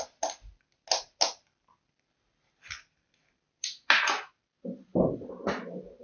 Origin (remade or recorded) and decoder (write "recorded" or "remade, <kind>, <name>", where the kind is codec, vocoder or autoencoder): recorded